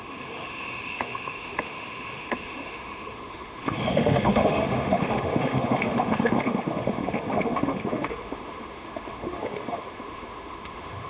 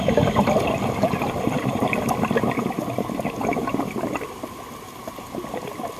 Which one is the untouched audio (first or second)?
second